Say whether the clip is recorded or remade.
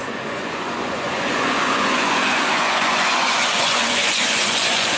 remade